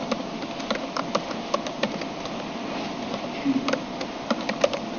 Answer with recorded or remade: recorded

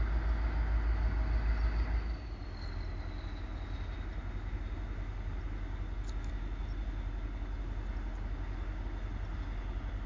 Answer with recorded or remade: recorded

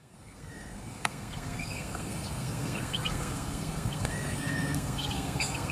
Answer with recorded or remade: remade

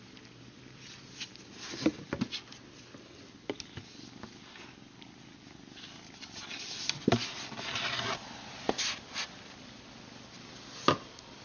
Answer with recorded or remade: recorded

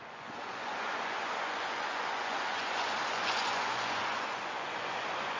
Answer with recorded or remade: remade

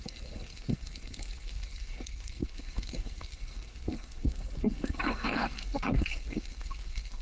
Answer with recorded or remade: remade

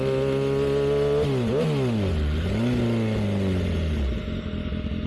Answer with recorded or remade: recorded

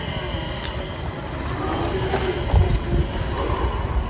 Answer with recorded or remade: recorded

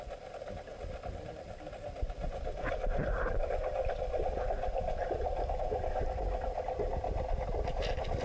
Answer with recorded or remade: recorded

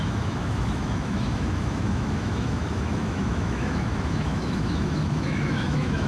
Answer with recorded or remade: remade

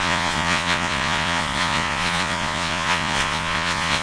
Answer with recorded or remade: remade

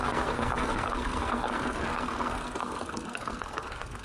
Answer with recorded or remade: remade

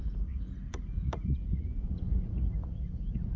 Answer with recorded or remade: remade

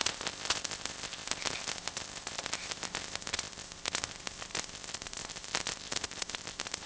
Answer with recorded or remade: remade